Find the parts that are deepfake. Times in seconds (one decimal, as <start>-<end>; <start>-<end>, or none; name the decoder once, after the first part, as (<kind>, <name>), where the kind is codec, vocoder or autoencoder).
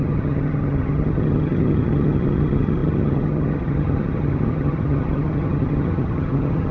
0.0-6.7 (vocoder, HiFi-GAN)